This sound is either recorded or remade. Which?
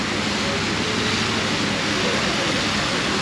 recorded